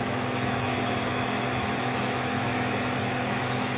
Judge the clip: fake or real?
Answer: fake